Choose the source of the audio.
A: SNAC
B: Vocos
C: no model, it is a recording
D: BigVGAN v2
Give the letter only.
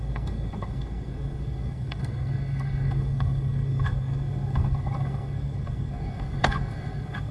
A